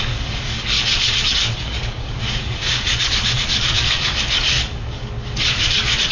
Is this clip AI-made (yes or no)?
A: yes